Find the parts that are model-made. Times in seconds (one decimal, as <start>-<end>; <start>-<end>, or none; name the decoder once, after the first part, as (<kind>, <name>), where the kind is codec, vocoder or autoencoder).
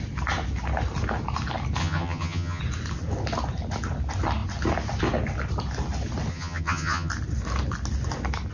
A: 1.8-2.6 (vocoder, HiFi-GAN); 6.3-7.1